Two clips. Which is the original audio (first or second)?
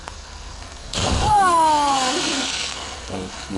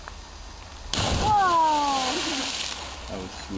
second